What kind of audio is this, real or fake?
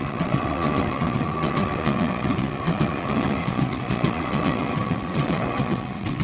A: fake